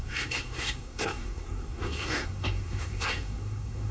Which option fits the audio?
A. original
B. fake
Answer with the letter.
B